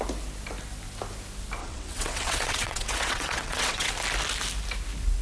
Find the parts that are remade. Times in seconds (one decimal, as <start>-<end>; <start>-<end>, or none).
1.6-3.9